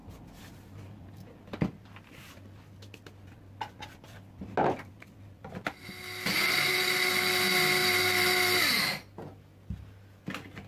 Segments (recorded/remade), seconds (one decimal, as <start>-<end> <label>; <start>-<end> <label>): 0.0-10.7 recorded